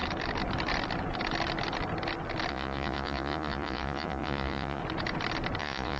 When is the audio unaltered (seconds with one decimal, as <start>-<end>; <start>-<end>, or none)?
0.0-2.5; 4.8-5.6